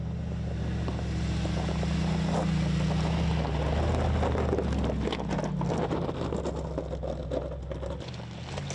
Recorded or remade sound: recorded